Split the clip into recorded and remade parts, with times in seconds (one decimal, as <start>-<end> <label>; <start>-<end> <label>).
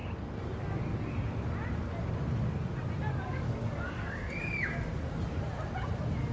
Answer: 0.0-3.1 recorded; 3.1-4.3 remade; 4.3-6.3 recorded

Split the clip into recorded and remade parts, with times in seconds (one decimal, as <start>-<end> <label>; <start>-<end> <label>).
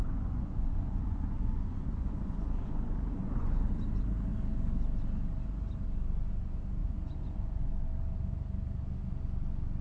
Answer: 0.0-3.7 remade; 3.7-6.8 recorded; 6.8-7.7 remade; 7.7-9.8 recorded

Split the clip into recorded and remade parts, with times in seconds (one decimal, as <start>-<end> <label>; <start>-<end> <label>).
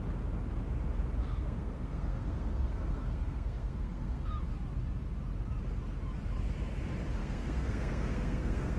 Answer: 0.0-1.2 recorded; 1.2-4.4 remade; 4.4-7.2 recorded; 7.2-8.8 remade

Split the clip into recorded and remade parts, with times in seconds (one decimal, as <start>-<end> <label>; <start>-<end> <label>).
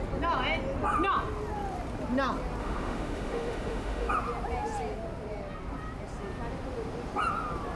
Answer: 0.0-2.6 recorded; 2.6-4.1 remade; 4.1-7.8 recorded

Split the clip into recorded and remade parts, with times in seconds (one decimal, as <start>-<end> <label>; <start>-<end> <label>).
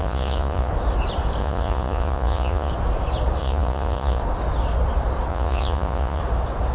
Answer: 0.0-0.7 remade; 0.7-1.4 recorded; 1.4-2.7 remade; 2.7-3.4 recorded; 3.4-4.2 remade; 4.2-5.3 recorded; 5.3-6.2 remade; 6.2-6.7 recorded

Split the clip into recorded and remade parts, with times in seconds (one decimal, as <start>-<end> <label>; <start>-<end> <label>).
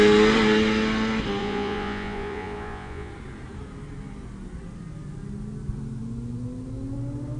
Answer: 0.0-1.4 recorded; 1.4-3.1 remade; 3.1-7.4 recorded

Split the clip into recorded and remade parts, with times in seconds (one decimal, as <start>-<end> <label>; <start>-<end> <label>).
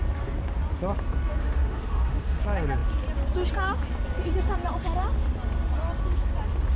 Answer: 0.0-1.4 recorded; 1.4-2.4 remade; 2.4-6.8 recorded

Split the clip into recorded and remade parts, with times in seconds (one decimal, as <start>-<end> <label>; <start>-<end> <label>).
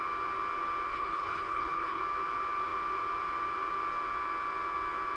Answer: 0.0-0.9 recorded; 0.9-2.0 remade; 2.0-5.2 recorded